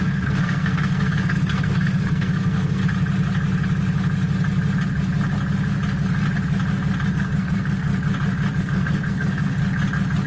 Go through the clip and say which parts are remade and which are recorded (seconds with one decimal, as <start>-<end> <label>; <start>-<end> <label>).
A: 0.0-2.8 remade; 2.8-7.1 recorded; 7.1-7.9 remade; 7.9-8.6 recorded; 8.6-9.6 remade; 9.6-10.3 recorded